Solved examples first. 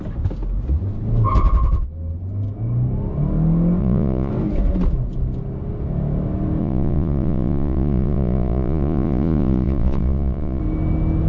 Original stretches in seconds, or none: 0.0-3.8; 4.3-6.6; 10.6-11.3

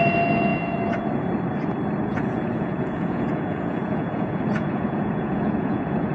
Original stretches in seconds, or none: 0.0-2.1

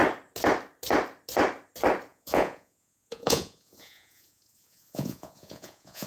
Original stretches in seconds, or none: 0.0-2.1

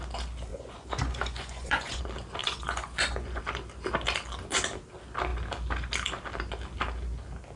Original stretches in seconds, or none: 0.0-0.5; 2.0-2.4; 3.4-7.6

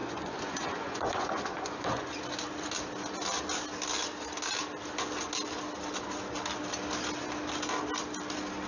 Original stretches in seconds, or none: 2.1-8.7

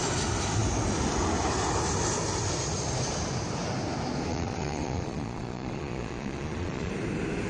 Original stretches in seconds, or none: 0.0-4.3; 6.9-7.5

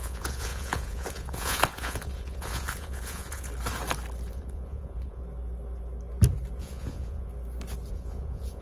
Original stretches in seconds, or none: 3.5-4.3; 5.2-6.6; 7.3-7.9